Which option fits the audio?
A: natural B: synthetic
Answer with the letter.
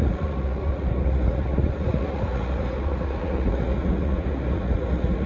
B